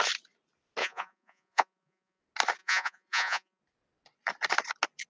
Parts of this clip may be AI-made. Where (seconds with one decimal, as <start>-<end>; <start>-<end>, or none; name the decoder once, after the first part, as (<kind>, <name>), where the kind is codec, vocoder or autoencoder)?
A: 0.8-2.2 (vocoder, Vocos); 2.6-3.6